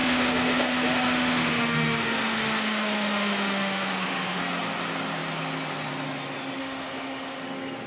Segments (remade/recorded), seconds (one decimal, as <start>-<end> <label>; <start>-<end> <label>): 0.0-4.4 remade; 4.4-6.6 recorded; 6.6-7.4 remade; 7.4-7.9 recorded